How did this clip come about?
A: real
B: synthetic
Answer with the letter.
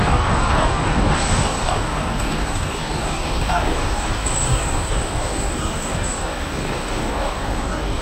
B